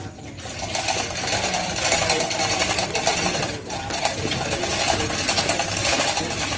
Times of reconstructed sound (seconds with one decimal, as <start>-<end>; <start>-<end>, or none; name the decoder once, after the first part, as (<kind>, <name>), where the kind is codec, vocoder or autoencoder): none